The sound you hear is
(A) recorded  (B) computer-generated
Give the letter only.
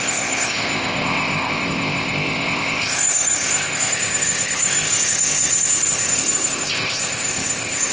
B